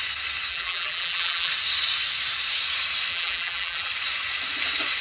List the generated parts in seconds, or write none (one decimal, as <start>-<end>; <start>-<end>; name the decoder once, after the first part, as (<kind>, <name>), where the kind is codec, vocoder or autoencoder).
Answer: 0.5-1.5 (vocoder, BigVGAN v2); 3.1-3.9